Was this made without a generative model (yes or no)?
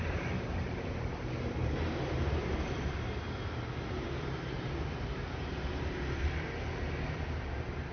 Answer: no